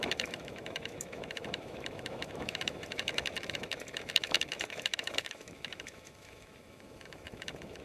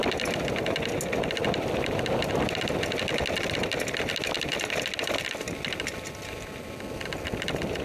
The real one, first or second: second